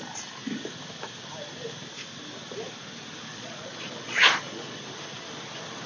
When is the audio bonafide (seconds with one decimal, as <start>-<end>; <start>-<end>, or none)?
0.0-3.3; 4.8-5.9